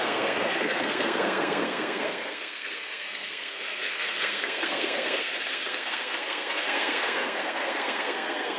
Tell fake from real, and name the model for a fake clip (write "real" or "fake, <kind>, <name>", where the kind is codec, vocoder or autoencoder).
fake, codec, SNAC